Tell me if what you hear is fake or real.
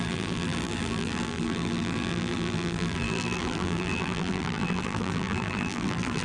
fake